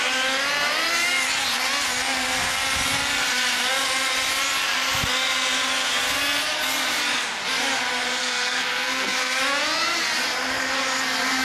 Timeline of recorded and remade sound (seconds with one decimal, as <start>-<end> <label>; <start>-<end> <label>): 0.0-8.2 recorded; 8.2-9.4 remade; 9.4-11.4 recorded